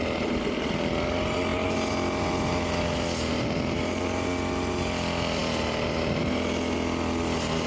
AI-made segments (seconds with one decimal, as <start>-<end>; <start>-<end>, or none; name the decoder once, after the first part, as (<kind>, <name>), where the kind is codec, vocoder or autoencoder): none